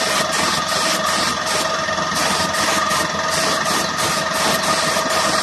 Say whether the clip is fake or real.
real